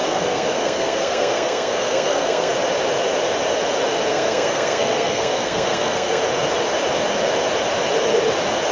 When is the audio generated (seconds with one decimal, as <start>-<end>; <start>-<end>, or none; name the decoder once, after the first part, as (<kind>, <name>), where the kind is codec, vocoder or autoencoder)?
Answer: 0.0-2.5 (codec, SNAC); 4.1-6.2